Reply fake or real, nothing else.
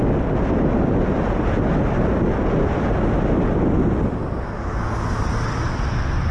real